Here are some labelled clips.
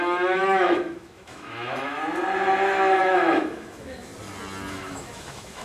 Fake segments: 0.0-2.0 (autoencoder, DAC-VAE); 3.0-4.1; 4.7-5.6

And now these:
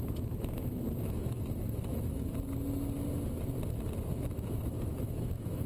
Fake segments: 0.0-2.3 (autoencoder, DAC-VAE); 4.1-5.7

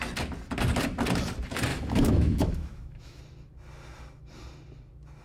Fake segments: 1.7-3.2 (autoencoder, DAC-VAE)

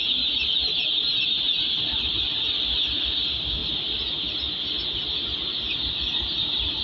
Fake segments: none

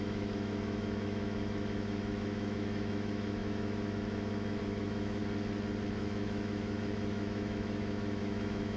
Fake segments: 0.0-5.2 (autoencoder, DAC-VAE); 5.9-8.8

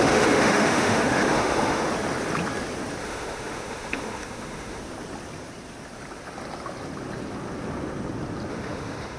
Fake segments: 0.0-1.9 (autoencoder, DAC-VAE); 3.0-4.8; 8.5-9.2

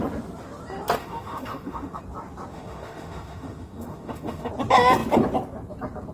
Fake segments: 1.0-2.0 (autoencoder, DAC-VAE); 2.5-4.5

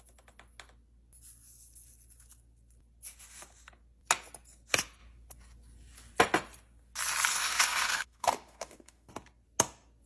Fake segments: 7.3-9.1 (autoencoder, DAC-VAE)